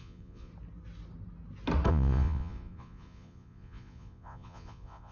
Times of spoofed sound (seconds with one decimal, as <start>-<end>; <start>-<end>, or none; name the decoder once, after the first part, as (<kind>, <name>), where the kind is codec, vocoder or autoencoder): 0.0-0.5 (vocoder, Vocos); 1.9-5.1